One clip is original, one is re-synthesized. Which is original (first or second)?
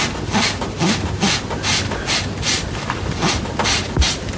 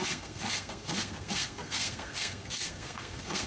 first